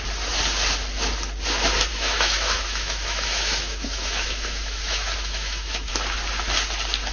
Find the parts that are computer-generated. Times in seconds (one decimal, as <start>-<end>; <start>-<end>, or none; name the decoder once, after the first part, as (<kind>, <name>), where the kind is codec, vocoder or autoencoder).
1.9-5.9 (autoencoder, DAC-VAE)